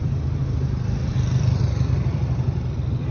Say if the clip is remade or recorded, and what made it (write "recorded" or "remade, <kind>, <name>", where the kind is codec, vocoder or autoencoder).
remade, vocoder, BigVGAN v2